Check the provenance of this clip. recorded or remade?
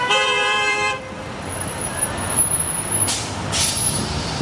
remade